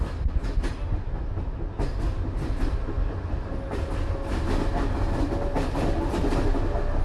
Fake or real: real